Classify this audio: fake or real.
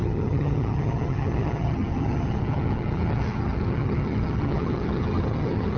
fake